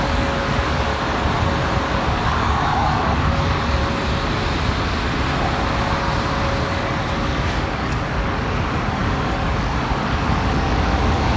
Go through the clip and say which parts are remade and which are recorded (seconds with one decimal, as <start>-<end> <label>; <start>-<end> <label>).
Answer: 0.0-0.9 remade; 0.9-1.8 recorded; 1.8-3.8 remade; 3.8-6.6 recorded; 6.6-11.4 remade